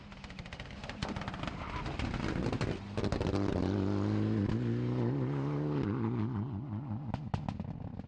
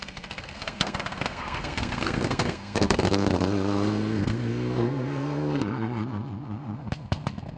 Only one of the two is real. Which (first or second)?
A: first